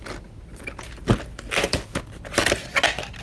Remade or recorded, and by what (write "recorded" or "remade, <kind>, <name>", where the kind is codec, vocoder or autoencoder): recorded